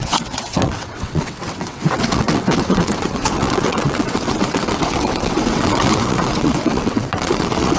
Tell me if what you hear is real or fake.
fake